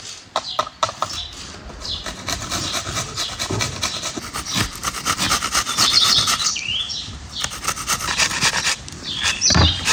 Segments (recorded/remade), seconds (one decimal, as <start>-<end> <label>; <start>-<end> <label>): 0.0-4.8 remade; 4.8-5.9 recorded; 5.9-9.9 remade